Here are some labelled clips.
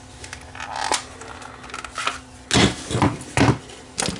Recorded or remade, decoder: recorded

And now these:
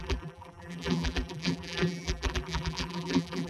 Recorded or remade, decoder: remade, vocoder, BigVGAN v2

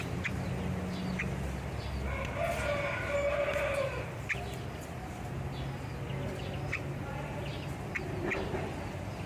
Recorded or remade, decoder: recorded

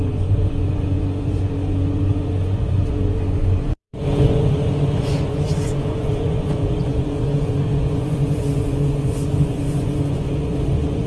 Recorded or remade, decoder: remade, vocoder, Vocos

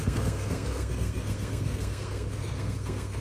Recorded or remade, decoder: remade, codec, SNAC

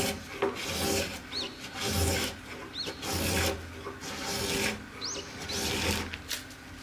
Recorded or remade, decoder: recorded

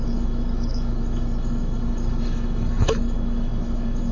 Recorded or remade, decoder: remade, autoencoder, DAC-VAE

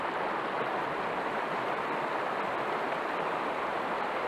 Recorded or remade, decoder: recorded